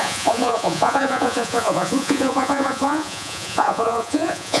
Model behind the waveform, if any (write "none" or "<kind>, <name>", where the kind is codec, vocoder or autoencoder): vocoder, Vocos